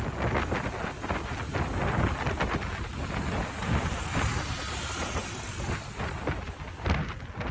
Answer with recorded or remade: recorded